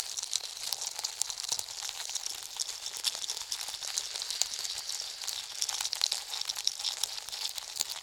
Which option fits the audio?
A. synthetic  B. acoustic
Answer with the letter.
B